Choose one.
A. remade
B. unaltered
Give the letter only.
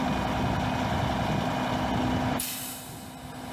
B